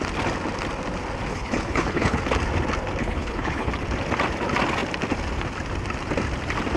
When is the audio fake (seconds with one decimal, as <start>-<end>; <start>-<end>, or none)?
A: 1.3-2.2; 3.0-3.7